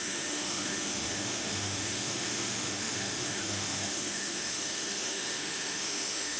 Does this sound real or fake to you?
fake